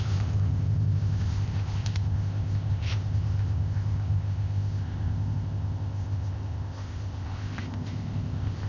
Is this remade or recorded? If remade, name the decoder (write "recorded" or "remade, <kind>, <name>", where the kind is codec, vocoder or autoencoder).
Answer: remade, codec, ZipCodec